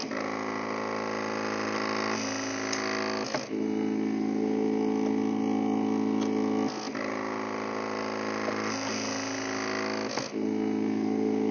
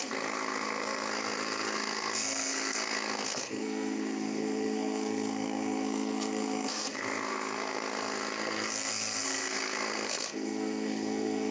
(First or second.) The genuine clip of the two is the first